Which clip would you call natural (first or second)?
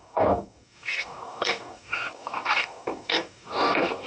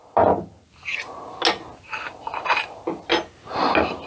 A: second